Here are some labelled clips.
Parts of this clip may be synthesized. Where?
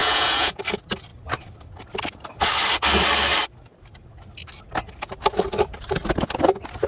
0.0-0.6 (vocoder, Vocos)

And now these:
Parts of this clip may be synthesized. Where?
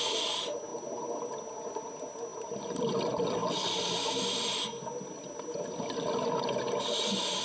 none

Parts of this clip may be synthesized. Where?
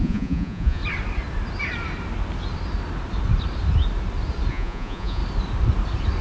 0.0-0.8 (vocoder, Vocos); 4.5-5.2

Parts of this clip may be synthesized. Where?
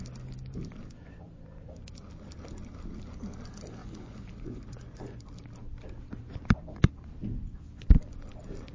3.8-5.2 (vocoder, Vocos)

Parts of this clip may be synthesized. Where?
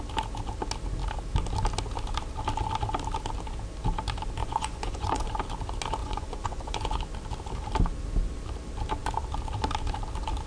4.4-5.3 (vocoder, Vocos); 6.0-7.0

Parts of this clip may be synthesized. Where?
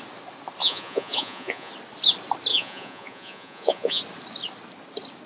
0.6-1.7 (vocoder, Vocos); 2.5-4.0